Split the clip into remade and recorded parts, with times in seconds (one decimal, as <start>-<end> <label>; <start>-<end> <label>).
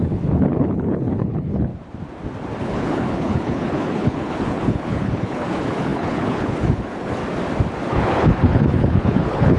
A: 0.0-1.7 remade; 1.7-2.6 recorded; 2.6-7.2 remade; 7.2-7.9 recorded; 7.9-9.6 remade